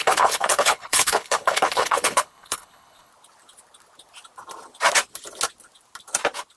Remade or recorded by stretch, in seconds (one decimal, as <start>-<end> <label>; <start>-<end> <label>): 0.0-3.1 remade; 3.1-6.6 recorded

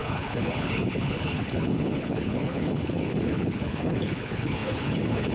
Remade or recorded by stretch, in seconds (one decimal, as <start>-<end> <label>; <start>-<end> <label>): 0.0-5.3 remade

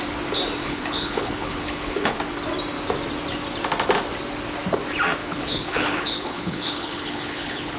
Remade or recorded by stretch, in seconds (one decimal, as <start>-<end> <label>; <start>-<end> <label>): 0.0-0.6 recorded; 0.6-2.2 remade; 2.2-5.2 recorded; 5.2-7.8 remade